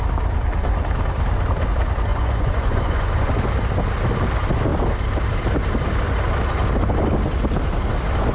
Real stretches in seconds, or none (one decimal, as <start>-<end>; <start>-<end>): 0.0-2.1; 3.3-8.3